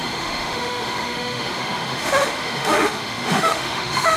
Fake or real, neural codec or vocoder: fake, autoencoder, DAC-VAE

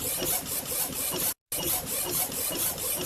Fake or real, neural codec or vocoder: real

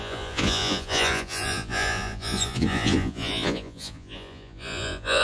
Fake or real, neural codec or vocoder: fake, vocoder, Vocos